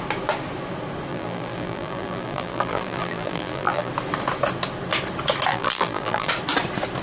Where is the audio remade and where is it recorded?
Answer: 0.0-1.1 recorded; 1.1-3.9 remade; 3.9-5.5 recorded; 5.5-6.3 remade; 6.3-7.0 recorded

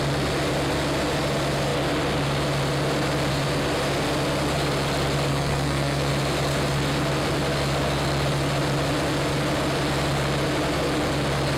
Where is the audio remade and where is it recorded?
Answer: 0.0-5.3 recorded; 5.3-6.1 remade; 6.1-11.6 recorded

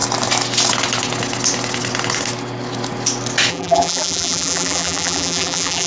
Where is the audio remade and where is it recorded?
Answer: 0.0-3.5 recorded; 3.5-5.9 remade